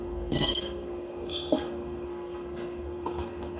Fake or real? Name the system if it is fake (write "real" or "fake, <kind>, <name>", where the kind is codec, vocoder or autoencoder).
fake, codec, SNAC